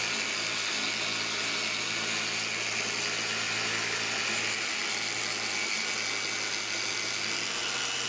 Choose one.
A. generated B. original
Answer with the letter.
B